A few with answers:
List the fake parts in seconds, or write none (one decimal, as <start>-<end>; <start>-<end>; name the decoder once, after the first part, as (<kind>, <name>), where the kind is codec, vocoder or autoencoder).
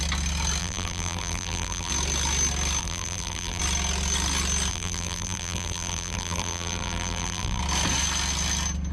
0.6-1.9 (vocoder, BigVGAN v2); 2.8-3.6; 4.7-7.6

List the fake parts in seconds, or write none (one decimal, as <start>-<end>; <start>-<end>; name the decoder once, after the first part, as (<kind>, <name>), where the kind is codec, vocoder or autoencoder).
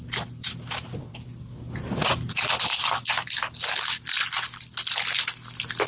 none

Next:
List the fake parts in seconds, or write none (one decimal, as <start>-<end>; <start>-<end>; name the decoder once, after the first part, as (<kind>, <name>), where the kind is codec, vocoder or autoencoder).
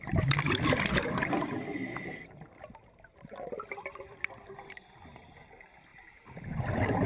2.7-4.8 (vocoder, BigVGAN v2); 5.9-7.1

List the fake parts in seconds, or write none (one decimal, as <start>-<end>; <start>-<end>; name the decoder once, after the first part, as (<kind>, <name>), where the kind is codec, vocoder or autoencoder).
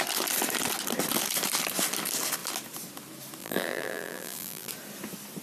3.4-4.7 (vocoder, BigVGAN v2)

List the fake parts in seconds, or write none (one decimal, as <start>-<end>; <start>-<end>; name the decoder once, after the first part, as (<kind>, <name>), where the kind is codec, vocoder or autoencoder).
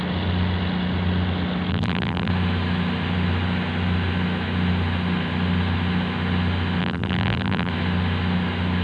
1.7-2.3 (vocoder, BigVGAN v2); 6.8-7.7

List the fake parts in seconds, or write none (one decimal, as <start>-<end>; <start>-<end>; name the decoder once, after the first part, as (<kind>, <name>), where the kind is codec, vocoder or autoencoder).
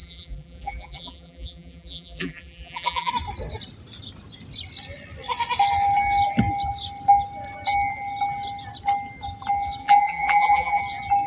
0.0-3.1 (vocoder, BigVGAN v2); 9.8-10.8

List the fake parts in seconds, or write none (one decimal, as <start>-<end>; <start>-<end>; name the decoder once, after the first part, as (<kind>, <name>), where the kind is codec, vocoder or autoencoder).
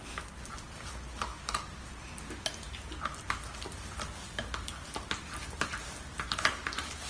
none